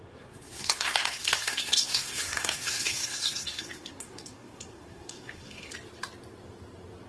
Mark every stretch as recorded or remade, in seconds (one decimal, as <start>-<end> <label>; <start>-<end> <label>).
0.0-5.7 remade; 5.7-7.1 recorded